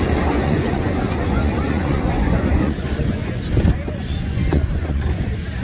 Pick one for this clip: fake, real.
fake